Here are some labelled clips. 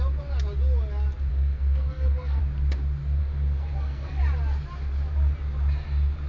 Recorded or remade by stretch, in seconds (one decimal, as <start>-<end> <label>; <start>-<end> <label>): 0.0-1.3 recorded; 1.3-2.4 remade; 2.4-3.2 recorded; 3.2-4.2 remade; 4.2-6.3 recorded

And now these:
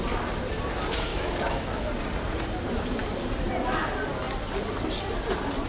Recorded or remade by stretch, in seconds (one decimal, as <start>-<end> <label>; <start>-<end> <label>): 0.0-1.1 recorded; 1.1-1.9 remade; 1.9-5.7 recorded

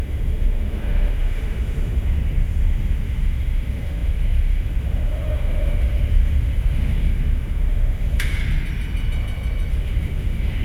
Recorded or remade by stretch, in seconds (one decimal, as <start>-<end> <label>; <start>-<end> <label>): 0.0-8.4 remade; 8.4-9.7 recorded; 9.7-10.6 remade

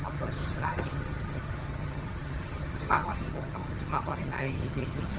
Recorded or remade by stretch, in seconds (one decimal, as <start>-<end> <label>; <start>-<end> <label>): 0.0-5.2 remade

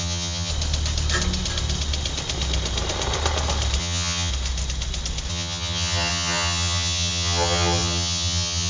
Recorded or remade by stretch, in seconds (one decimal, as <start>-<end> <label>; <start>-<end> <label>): 0.0-0.5 remade; 0.5-3.8 recorded; 3.8-4.3 remade; 4.3-5.3 recorded; 5.3-8.7 remade

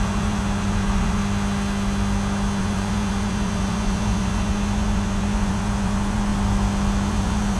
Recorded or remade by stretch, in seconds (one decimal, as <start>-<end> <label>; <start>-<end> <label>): 0.0-1.2 remade; 1.2-2.6 recorded; 2.6-6.3 remade; 6.3-7.1 recorded; 7.1-7.6 remade